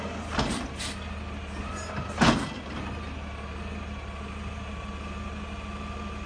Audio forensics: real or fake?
real